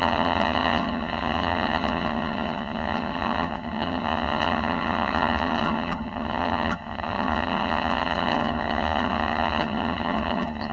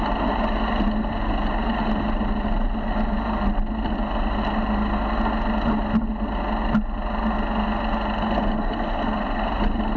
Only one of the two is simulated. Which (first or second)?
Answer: first